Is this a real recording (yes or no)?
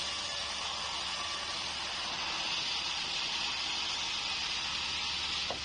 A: yes